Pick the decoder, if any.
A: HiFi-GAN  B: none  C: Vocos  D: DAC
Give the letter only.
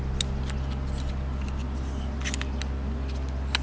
B